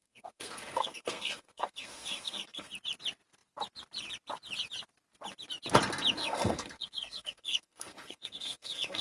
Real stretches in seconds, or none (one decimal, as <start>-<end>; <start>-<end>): 2.7-6.2